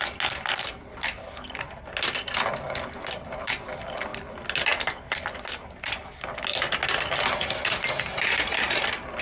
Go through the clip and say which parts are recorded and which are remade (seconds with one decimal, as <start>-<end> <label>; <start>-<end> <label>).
0.0-9.2 recorded